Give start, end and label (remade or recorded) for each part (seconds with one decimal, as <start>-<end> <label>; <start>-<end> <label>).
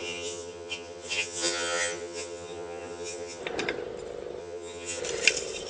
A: 0.0-3.4 remade; 3.4-4.4 recorded; 4.4-5.0 remade; 5.0-5.7 recorded